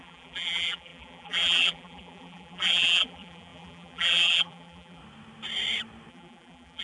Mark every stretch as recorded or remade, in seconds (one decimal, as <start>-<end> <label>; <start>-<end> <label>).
0.0-5.0 remade; 5.0-6.1 recorded; 6.1-6.8 remade